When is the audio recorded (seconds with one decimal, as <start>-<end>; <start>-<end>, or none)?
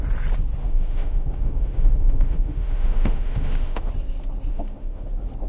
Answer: 0.0-0.6; 3.9-4.5; 5.1-5.5